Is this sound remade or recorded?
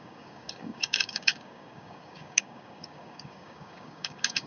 remade